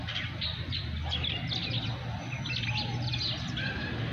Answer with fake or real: real